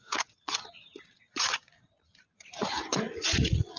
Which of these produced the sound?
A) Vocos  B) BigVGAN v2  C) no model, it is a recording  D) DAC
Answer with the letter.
A